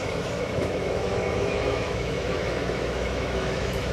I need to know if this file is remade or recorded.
remade